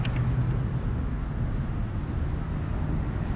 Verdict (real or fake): real